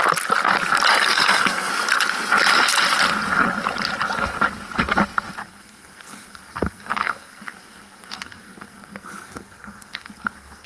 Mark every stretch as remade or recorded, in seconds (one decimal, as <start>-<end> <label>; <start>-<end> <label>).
0.0-0.9 recorded; 0.9-1.7 remade; 1.7-5.4 recorded; 5.4-10.7 remade